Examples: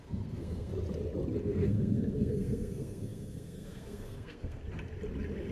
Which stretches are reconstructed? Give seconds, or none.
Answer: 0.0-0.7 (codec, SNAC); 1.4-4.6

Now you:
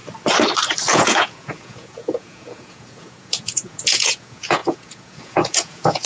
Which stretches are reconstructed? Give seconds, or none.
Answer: 0.9-6.1 (vocoder, Vocos)

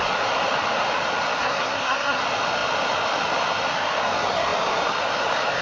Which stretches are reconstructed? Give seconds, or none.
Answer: 1.4-2.2 (codec, SNAC)

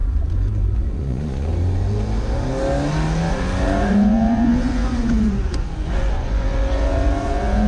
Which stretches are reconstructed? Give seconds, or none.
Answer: 0.0-1.5 (vocoder, Vocos); 3.3-7.7

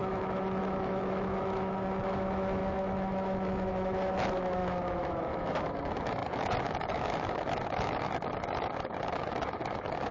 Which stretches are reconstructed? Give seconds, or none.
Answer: 0.0-10.1 (autoencoder, DAC-VAE)

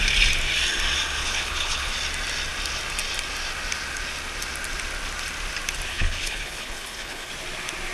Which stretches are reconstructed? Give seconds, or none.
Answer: 1.2-1.9 (codec, HILCodec); 5.9-7.3